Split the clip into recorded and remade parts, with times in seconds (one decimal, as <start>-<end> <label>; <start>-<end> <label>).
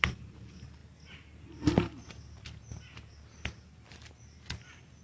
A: 0.0-5.0 recorded